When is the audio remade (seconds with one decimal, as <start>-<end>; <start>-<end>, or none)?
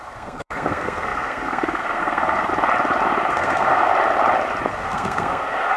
0.0-2.5; 3.3-3.9; 4.7-5.8